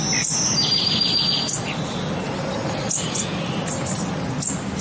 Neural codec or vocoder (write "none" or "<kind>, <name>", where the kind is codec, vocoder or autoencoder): none